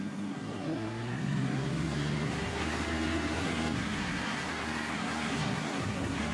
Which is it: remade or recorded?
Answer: remade